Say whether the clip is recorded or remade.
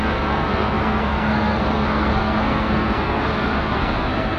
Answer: remade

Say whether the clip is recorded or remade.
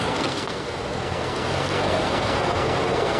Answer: remade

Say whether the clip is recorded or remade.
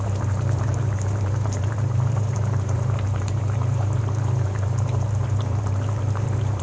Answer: remade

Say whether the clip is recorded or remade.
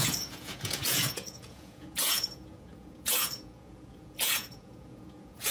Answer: remade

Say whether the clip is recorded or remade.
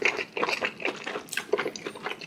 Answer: recorded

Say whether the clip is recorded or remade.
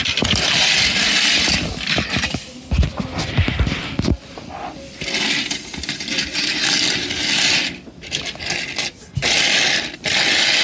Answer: recorded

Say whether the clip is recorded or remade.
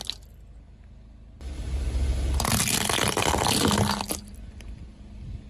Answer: recorded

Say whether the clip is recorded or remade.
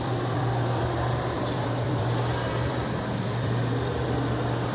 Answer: remade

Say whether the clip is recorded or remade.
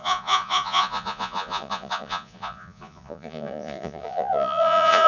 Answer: remade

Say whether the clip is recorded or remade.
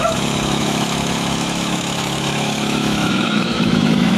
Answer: remade